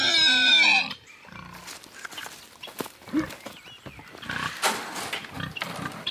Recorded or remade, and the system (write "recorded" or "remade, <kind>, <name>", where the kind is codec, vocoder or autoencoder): recorded